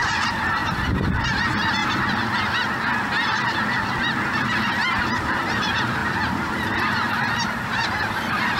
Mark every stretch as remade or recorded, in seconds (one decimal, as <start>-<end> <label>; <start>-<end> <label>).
0.0-1.8 remade; 1.8-5.1 recorded; 5.1-8.6 remade